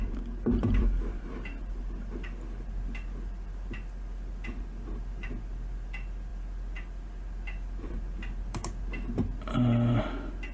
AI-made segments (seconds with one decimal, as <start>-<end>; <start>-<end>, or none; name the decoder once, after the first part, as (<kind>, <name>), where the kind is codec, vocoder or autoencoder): 0.0-10.5 (vocoder, BigVGAN v2)